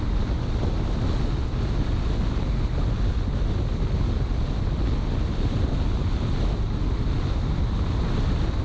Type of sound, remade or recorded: recorded